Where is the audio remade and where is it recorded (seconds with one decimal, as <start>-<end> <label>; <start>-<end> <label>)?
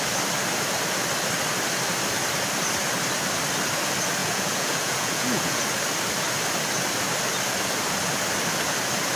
0.0-4.2 recorded; 4.2-5.6 remade; 5.6-9.2 recorded